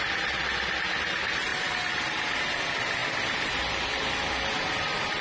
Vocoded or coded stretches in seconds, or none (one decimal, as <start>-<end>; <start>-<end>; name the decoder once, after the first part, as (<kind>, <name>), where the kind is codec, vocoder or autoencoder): none